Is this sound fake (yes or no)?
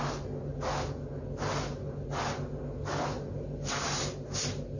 no